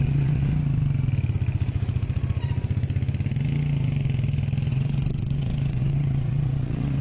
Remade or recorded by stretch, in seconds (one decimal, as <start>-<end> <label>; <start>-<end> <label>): 0.0-0.5 remade; 0.5-4.7 recorded; 4.7-7.0 remade